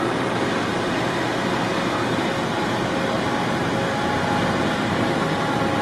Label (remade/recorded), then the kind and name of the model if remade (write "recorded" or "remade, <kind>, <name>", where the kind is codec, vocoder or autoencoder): recorded